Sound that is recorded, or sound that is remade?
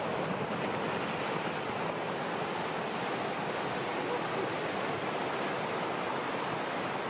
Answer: recorded